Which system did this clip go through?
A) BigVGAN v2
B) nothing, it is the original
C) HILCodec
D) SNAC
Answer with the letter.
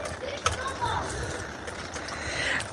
B